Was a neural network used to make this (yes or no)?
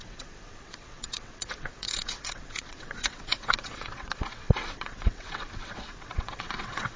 yes